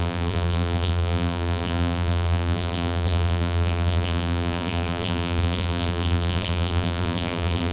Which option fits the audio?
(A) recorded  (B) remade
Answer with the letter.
B